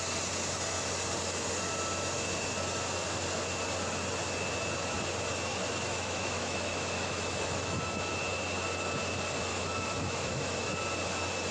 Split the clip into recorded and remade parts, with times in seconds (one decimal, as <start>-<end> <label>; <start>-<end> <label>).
0.0-5.5 recorded; 5.5-8.1 remade; 8.1-9.5 recorded; 9.5-10.7 remade; 10.7-11.5 recorded